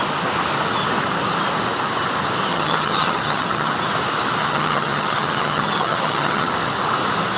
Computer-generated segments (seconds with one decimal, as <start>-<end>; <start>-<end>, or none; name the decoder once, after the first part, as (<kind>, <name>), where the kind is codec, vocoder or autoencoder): 2.5-3.7 (vocoder, HiFi-GAN); 4.4-6.5